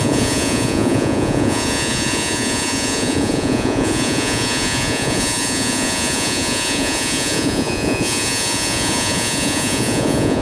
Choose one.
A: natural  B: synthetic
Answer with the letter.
B